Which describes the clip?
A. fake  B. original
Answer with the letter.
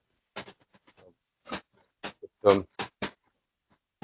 B